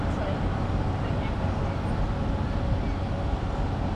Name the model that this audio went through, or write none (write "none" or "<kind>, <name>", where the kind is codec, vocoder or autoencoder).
none